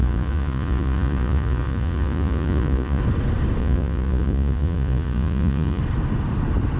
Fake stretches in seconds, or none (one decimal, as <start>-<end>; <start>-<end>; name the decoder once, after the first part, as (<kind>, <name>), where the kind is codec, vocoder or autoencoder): 0.0-3.0 (vocoder, Vocos); 3.6-5.8